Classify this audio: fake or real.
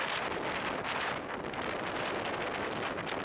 real